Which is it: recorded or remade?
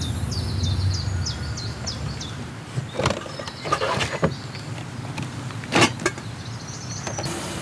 recorded